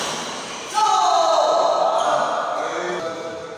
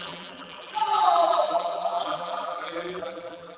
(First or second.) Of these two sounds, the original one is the first